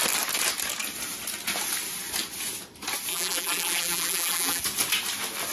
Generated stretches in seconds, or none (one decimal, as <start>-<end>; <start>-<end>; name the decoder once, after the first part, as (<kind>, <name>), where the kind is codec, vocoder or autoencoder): 3.1-4.6 (vocoder, BigVGAN v2)